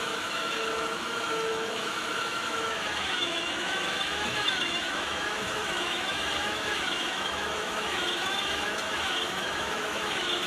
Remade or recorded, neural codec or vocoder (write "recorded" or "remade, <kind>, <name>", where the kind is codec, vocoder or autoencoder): remade, autoencoder, DAC-VAE